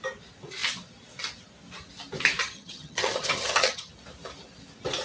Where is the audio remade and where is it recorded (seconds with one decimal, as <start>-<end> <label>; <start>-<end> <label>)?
0.0-2.4 recorded; 2.4-3.9 remade; 3.9-5.0 recorded